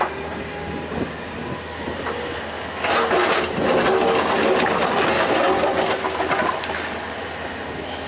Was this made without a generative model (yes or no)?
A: yes